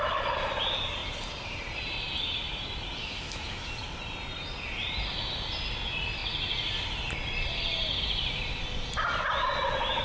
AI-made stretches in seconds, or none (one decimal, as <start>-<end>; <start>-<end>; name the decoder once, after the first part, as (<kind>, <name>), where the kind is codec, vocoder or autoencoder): 3.0-3.7 (autoencoder, DAC-VAE)